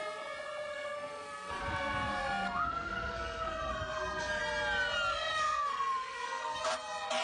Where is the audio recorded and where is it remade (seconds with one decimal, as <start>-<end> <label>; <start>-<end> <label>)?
0.0-0.7 recorded; 0.7-1.6 remade; 1.6-2.2 recorded; 2.2-4.4 remade; 4.4-5.1 recorded; 5.1-6.6 remade; 6.6-7.2 recorded